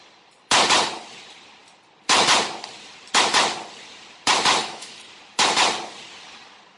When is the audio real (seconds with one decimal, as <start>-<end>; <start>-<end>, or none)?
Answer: 0.0-4.6; 5.1-6.8